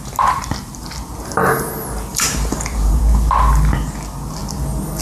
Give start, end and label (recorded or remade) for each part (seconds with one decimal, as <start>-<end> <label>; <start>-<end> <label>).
0.0-2.1 recorded; 2.1-3.0 remade; 3.0-5.0 recorded